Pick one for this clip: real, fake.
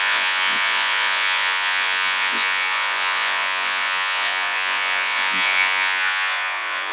fake